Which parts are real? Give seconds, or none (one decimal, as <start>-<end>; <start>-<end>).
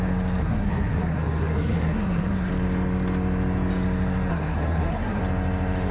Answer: 0.0-0.4; 2.5-4.3; 5.2-5.9